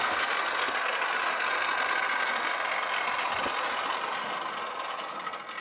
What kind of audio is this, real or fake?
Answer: real